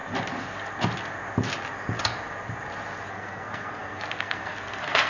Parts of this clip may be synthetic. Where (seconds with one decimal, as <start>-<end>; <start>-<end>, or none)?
3.1-5.1